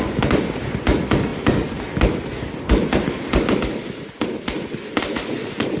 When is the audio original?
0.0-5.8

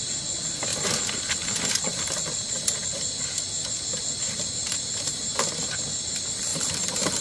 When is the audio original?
0.0-6.5

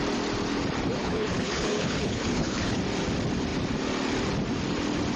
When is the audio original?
0.0-1.0; 2.8-5.2

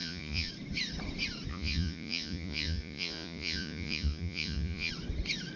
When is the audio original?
0.5-1.5; 4.9-5.6

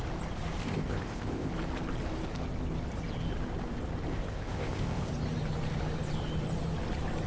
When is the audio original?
0.0-0.6; 1.5-4.1; 5.1-7.3

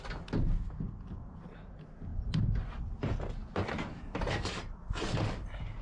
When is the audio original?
0.0-5.8

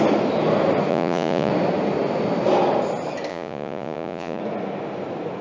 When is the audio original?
0.0-0.9; 1.5-3.3; 4.4-5.4

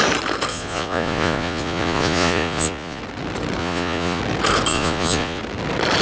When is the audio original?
0.0-0.5; 3.0-3.6; 4.2-4.7; 5.4-6.0